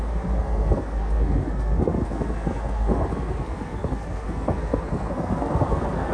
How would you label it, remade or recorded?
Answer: remade